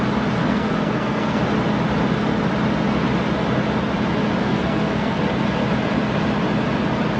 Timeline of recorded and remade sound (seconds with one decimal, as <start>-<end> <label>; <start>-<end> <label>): 0.0-0.4 recorded; 0.4-1.4 remade; 1.4-4.4 recorded; 4.4-5.2 remade; 5.2-7.2 recorded